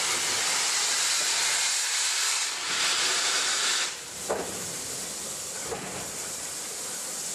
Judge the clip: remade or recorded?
remade